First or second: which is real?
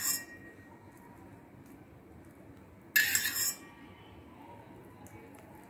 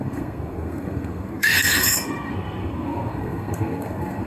first